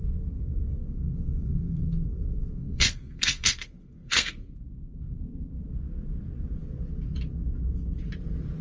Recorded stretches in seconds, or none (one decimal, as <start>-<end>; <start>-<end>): 5.2-8.6